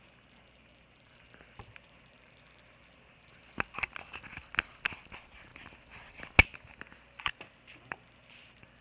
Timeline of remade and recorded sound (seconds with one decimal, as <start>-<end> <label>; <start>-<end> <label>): 0.0-3.4 remade; 3.4-5.1 recorded; 5.1-5.5 remade; 5.5-7.2 recorded; 7.2-8.8 remade